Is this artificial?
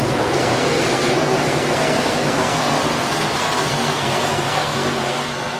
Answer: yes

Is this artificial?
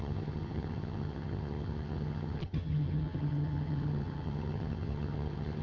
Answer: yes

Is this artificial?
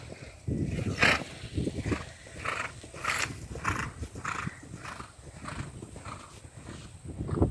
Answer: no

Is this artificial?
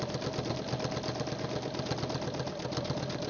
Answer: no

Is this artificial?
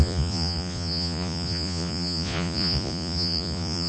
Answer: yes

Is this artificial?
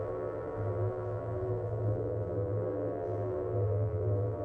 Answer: yes